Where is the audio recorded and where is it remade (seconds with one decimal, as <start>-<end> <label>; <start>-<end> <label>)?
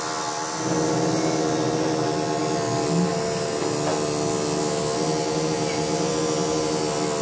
0.0-7.2 recorded